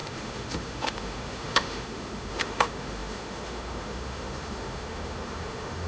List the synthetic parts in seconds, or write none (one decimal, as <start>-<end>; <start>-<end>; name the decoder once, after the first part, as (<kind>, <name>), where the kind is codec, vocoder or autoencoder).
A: 0.0-5.9 (autoencoder, DAC-VAE)